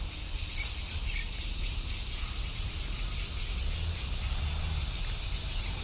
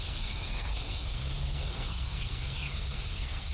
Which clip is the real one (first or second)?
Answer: first